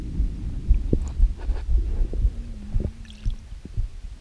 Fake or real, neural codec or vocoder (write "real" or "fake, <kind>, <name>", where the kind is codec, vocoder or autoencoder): real